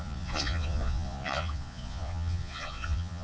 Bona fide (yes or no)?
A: no